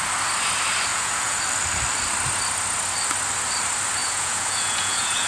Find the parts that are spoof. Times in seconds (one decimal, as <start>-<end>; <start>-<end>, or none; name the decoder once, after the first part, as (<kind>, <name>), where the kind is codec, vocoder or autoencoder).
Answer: 0.9-1.4 (vocoder, Vocos); 4.0-5.3